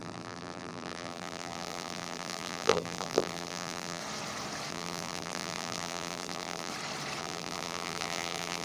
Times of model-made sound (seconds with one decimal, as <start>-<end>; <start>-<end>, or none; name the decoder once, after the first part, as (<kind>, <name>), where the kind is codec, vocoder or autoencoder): 0.0-4.0 (vocoder, BigVGAN v2); 4.7-6.7; 7.2-8.6